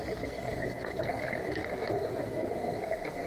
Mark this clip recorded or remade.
remade